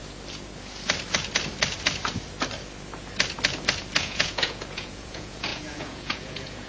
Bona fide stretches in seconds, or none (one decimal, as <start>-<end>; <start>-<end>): 0.0-4.0

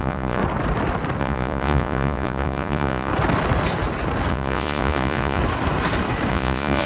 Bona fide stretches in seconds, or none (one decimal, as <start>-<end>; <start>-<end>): 0.4-1.2; 3.1-4.3; 5.4-6.3

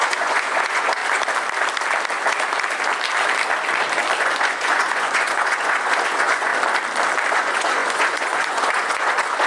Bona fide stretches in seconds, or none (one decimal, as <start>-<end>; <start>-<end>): 1.0-4.2; 6.5-7.3

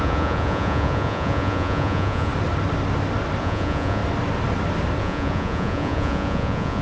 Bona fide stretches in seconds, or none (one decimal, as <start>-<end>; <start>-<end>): 2.3-3.4; 4.0-5.0